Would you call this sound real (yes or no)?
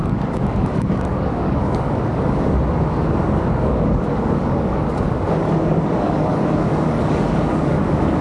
no